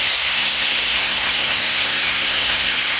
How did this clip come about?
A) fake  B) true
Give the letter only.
A